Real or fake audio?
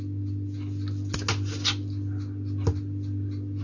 real